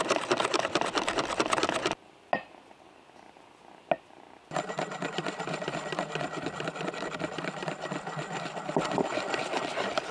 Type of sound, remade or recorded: recorded